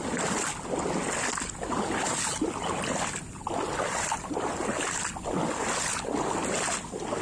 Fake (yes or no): no